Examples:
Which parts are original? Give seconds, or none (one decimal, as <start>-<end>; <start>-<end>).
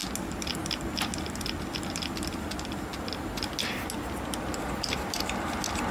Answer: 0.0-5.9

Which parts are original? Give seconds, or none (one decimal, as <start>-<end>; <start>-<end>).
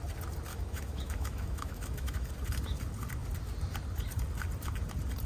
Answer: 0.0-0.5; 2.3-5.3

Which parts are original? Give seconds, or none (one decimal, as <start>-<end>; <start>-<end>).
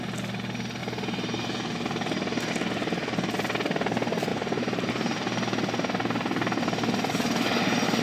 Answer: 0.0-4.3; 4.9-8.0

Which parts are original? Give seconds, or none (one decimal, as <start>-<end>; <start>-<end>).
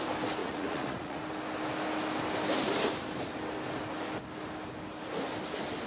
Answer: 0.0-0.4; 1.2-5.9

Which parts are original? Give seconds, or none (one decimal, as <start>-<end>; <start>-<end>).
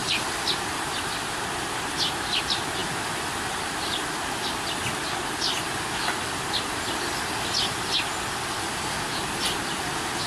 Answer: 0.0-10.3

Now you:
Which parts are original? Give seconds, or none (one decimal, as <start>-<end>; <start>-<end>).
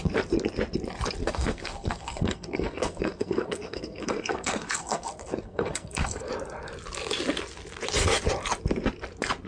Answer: 0.0-1.2; 6.3-9.5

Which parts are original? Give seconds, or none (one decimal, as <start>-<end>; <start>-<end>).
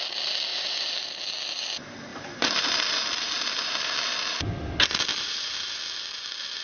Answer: 0.0-0.5; 1.2-2.1; 4.0-5.1; 5.7-6.6